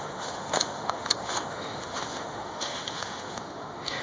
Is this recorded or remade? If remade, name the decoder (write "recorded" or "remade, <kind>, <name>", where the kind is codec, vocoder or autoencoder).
remade, autoencoder, DAC-VAE